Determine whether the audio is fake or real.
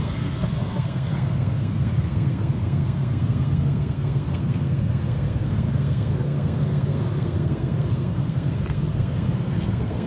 fake